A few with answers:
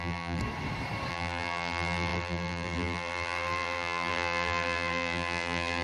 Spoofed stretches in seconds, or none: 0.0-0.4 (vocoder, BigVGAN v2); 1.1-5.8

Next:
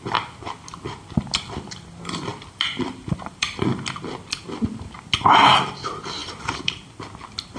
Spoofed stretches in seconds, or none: 2.3-4.0 (vocoder, BigVGAN v2); 6.2-7.0